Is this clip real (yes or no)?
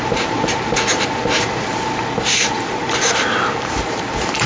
no